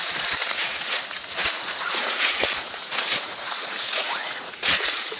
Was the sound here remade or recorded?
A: remade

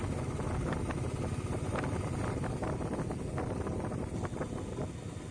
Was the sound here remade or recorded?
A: recorded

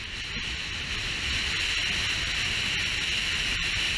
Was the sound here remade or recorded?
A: recorded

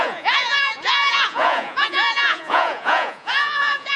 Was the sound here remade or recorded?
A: remade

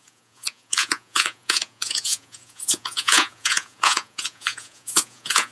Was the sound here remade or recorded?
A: remade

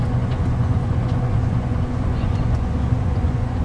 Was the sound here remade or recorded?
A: remade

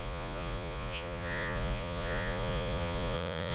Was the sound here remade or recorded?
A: remade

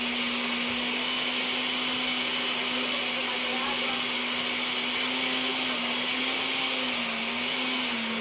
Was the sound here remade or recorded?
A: recorded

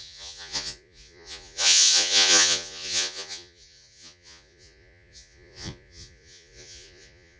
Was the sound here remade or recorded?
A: remade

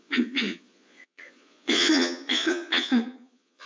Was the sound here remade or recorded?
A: remade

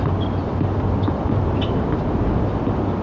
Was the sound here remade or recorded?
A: recorded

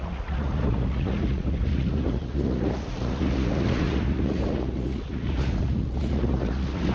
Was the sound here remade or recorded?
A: remade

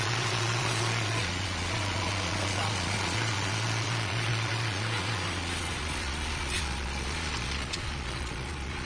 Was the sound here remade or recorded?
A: remade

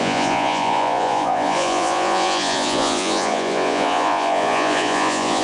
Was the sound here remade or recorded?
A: remade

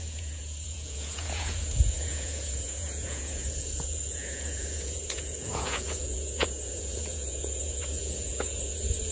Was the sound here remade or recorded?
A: remade